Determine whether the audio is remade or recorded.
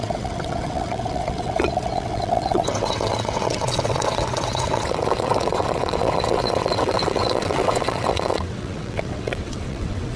remade